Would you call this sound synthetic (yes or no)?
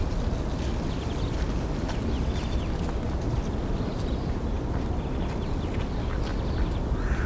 no